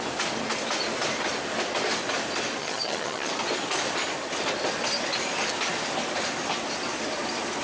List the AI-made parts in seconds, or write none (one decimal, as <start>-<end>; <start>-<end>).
2.6-3.3